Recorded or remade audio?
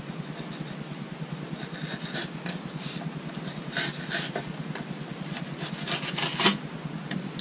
recorded